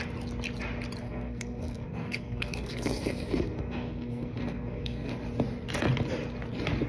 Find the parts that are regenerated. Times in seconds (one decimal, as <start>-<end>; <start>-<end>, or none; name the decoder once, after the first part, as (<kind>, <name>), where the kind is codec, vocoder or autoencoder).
1.0-5.1 (codec, SNAC)